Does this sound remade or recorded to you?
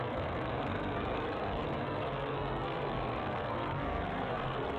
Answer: remade